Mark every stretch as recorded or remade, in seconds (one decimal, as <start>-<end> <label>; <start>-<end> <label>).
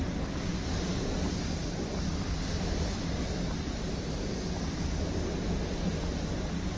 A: 0.0-6.8 recorded